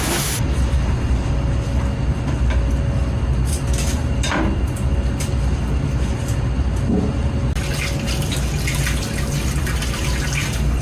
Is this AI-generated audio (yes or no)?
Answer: no